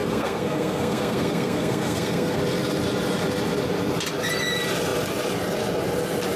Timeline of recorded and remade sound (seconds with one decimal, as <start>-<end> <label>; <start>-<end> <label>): 0.0-2.4 remade; 2.4-6.4 recorded